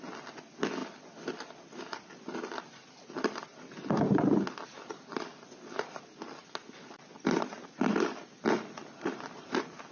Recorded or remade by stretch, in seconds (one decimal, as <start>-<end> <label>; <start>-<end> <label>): 0.0-9.9 recorded